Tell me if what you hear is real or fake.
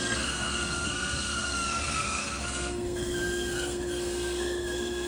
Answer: fake